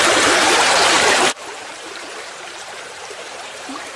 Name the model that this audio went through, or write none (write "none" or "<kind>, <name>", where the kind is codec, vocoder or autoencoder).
vocoder, BigVGAN v2